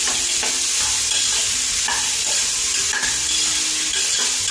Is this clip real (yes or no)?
yes